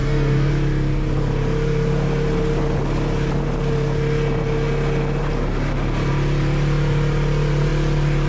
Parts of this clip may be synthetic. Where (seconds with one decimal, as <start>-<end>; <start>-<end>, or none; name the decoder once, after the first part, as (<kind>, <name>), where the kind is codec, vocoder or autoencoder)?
0.0-0.5 (codec, DAC)

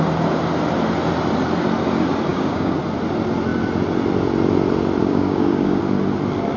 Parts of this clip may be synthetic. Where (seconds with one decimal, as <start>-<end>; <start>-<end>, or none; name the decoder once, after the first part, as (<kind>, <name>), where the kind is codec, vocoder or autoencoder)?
2.3-2.8 (codec, DAC); 5.0-5.8

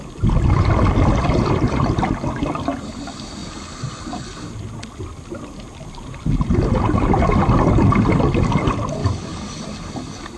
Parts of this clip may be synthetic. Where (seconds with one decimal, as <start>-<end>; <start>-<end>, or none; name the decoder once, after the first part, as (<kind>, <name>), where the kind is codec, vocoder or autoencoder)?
9.0-9.5 (codec, DAC)